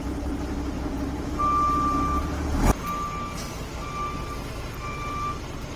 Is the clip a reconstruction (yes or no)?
no